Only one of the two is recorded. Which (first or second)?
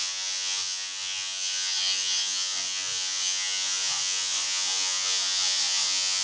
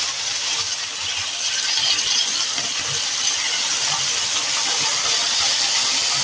second